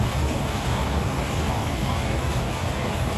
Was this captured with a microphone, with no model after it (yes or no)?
no